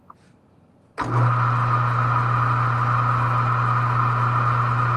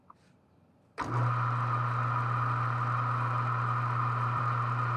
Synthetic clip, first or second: second